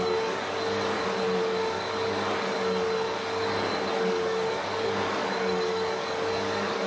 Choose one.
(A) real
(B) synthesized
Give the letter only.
B